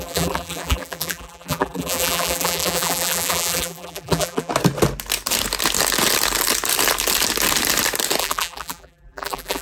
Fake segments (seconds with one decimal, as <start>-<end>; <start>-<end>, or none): 0.0-4.5; 8.2-9.6

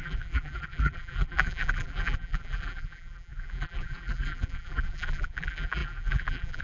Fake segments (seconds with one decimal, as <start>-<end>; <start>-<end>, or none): 0.0-6.6

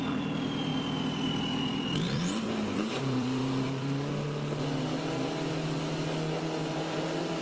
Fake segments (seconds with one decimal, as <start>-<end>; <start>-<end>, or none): 0.7-4.1; 6.6-7.4